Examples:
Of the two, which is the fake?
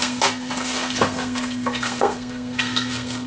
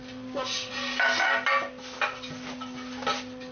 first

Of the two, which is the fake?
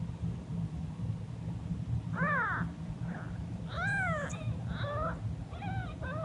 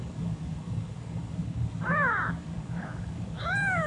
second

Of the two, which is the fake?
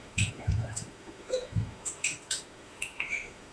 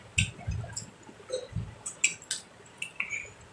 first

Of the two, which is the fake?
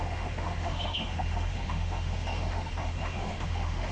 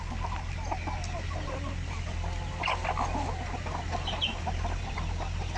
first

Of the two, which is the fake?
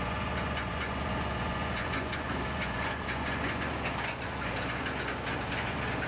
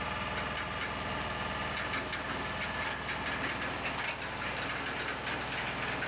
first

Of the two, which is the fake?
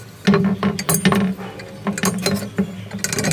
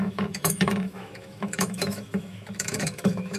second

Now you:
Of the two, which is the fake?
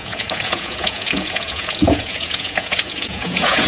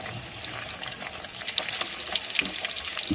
first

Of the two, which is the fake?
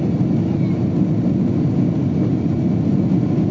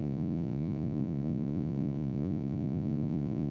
second